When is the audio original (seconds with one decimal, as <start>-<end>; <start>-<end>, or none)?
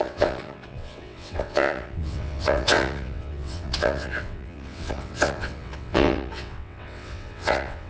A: none